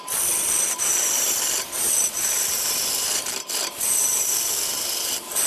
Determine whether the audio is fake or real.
fake